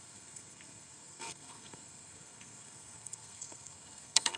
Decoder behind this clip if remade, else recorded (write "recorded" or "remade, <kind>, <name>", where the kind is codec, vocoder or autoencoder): remade, codec, SNAC